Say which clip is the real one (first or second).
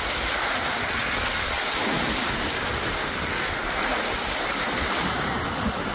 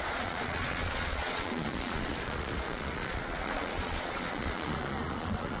first